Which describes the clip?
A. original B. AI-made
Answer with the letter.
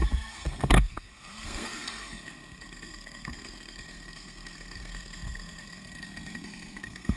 B